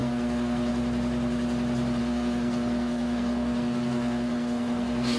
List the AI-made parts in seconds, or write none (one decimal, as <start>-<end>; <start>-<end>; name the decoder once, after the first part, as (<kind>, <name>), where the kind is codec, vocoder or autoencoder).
0.0-0.7 (codec, SNAC); 2.0-5.2